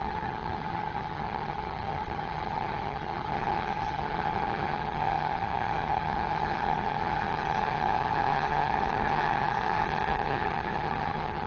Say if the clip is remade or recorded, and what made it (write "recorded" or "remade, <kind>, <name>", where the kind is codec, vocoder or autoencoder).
remade, vocoder, HiFi-GAN